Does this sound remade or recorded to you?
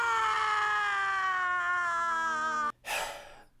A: recorded